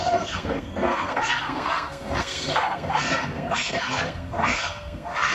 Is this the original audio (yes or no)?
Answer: no